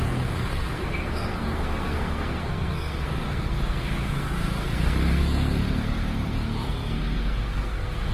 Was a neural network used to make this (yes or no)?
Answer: yes